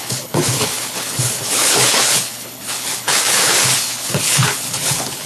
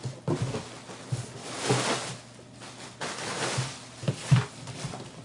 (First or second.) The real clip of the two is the second